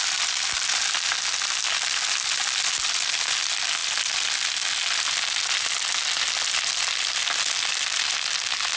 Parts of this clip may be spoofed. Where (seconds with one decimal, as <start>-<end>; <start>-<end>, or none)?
none